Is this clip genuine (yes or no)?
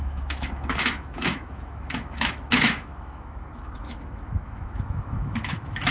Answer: no